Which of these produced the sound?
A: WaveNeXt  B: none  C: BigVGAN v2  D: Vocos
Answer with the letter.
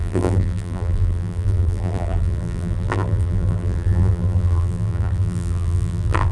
C